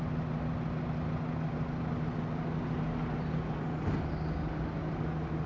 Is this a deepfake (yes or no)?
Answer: no